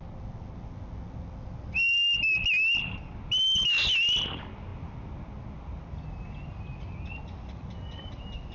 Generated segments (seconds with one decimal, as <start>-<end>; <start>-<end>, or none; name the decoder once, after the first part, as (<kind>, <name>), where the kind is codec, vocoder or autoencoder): none

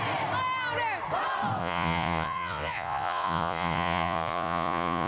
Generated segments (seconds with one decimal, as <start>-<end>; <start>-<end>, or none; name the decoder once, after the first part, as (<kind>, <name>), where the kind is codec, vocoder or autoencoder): 1.6-5.1 (vocoder, Vocos)

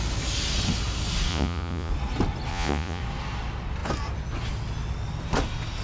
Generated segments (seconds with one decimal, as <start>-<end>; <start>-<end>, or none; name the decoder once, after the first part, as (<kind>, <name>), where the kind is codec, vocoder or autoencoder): 1.3-1.9 (vocoder, Vocos); 2.5-3.0

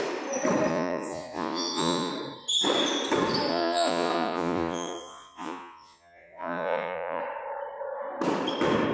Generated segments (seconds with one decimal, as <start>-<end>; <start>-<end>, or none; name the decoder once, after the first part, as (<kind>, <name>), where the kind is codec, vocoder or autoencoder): 0.7-2.1 (vocoder, Vocos); 3.5-7.2

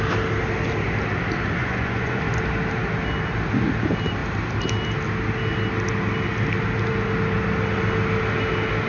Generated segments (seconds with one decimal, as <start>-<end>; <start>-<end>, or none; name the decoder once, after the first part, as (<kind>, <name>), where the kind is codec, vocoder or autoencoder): 1.6-2.2 (vocoder, Vocos)

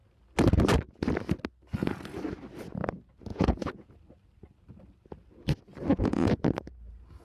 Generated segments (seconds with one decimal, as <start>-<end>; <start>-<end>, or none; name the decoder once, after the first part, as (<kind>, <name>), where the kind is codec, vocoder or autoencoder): 3.3-3.9 (vocoder, Vocos); 5.9-6.4

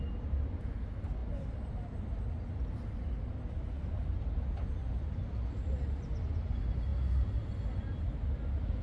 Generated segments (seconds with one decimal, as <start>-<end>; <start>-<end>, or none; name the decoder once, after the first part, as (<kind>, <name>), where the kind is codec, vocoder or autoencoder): none

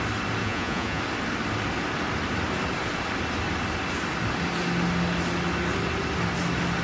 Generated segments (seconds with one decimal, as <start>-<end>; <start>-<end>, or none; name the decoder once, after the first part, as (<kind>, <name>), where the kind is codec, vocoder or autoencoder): 0.4-1.0 (vocoder, Vocos)